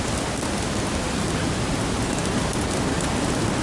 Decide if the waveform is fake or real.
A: real